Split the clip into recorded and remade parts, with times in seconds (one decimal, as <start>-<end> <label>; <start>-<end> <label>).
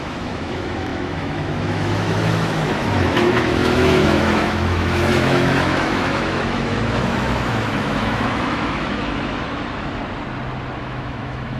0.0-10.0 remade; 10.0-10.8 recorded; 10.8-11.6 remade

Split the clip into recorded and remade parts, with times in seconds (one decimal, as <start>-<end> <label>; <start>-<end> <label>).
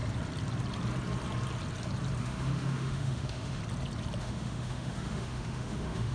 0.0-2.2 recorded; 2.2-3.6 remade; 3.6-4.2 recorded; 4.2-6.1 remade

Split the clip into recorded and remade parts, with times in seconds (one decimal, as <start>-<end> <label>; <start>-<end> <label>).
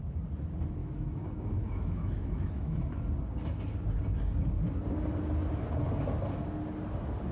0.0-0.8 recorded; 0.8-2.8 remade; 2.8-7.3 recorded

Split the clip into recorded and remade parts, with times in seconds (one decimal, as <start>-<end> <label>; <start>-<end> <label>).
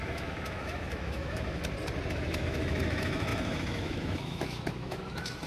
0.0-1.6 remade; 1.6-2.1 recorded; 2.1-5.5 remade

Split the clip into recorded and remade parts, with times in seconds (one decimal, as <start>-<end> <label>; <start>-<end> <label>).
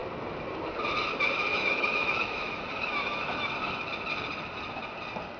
0.0-1.5 recorded; 1.5-3.5 remade; 3.5-5.4 recorded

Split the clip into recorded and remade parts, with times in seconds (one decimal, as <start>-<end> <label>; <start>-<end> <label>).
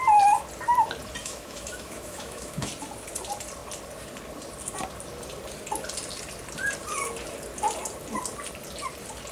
0.0-1.2 recorded; 1.2-2.7 remade; 2.7-9.3 recorded